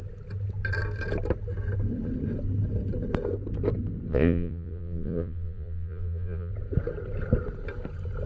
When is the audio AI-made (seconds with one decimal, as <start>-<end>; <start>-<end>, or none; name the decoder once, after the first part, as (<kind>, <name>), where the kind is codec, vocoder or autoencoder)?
4.1-6.5 (vocoder, Vocos)